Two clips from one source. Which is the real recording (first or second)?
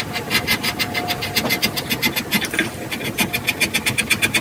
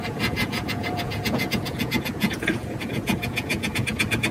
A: first